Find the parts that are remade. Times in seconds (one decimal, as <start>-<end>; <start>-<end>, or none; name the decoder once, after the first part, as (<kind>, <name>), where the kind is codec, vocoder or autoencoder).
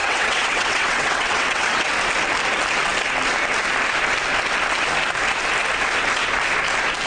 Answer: 0.0-1.9 (vocoder, WaveNeXt)